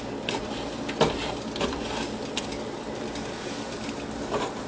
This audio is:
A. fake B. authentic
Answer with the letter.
B